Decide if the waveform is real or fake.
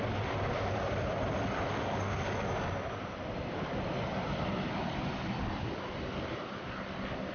real